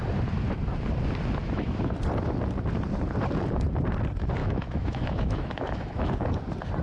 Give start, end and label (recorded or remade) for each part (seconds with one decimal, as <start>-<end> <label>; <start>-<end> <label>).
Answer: 0.0-1.4 recorded; 1.4-1.9 remade; 1.9-4.4 recorded; 4.4-6.1 remade; 6.1-6.8 recorded